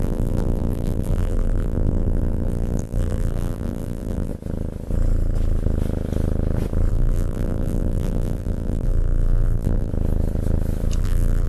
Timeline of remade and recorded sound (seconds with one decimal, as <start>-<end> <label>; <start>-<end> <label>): 0.0-4.3 remade; 4.3-6.9 recorded; 6.9-9.9 remade; 9.9-11.0 recorded; 11.0-11.5 remade